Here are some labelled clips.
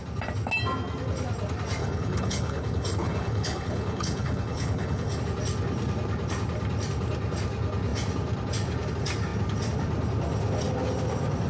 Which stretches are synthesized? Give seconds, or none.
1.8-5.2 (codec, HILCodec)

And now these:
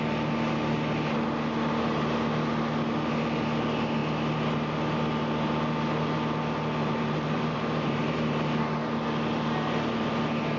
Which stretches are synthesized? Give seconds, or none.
6.8-8.5 (vocoder, BigVGAN v2)